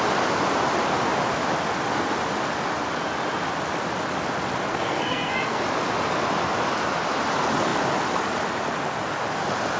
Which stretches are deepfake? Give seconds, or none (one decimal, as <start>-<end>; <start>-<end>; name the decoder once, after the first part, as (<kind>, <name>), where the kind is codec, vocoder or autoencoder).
4.7-5.6 (codec, SNAC)